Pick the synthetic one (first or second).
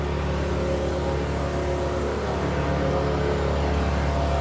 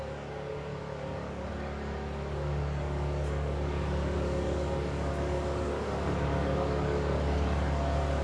second